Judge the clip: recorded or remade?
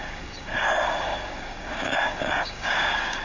remade